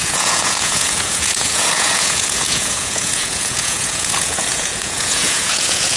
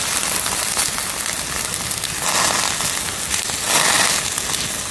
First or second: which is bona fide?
second